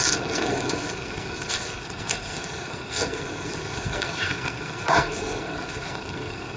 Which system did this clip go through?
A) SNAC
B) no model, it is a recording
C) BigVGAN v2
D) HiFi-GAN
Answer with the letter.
A